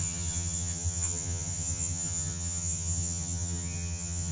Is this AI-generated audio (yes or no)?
yes